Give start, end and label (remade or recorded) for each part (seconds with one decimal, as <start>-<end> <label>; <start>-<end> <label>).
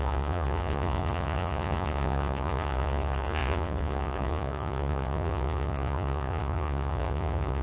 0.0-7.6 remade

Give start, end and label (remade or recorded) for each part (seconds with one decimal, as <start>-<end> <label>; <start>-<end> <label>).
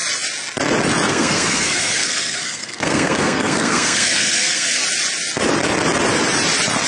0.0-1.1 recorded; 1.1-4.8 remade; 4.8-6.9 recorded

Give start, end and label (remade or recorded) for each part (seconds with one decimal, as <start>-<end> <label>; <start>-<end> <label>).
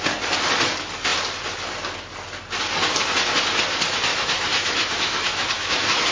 0.0-4.1 recorded; 4.1-6.1 remade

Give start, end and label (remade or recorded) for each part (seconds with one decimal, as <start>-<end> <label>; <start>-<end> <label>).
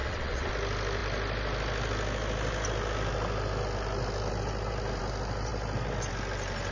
0.0-0.5 remade; 0.5-6.7 recorded